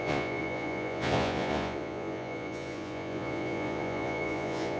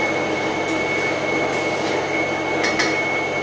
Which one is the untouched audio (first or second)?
second